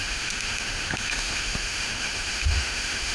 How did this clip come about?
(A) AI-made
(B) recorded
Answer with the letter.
A